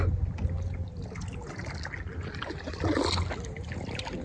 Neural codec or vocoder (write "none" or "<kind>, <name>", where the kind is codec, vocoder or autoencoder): none